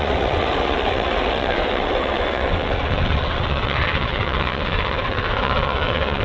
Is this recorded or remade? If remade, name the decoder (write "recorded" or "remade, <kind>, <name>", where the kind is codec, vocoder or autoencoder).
remade, vocoder, WaveNeXt